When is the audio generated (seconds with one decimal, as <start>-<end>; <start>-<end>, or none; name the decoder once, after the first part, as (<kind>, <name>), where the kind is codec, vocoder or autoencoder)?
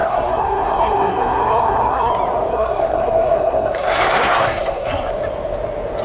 0.0-2.1 (codec, SNAC); 2.5-5.1